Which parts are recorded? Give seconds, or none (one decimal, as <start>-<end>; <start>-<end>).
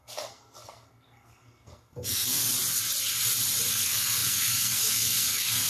2.4-3.7